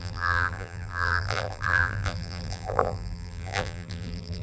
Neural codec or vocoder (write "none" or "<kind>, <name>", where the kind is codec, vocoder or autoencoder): vocoder, BigVGAN v2